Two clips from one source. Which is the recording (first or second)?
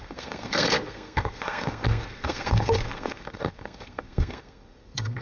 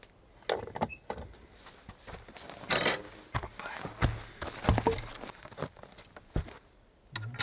second